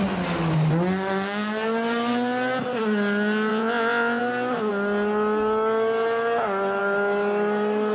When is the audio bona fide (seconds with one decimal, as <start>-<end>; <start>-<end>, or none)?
0.0-3.5; 4.2-7.9